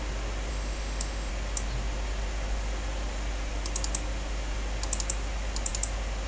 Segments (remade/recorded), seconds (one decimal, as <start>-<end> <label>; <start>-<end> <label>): 0.0-0.5 recorded; 0.5-1.3 remade; 1.3-6.3 recorded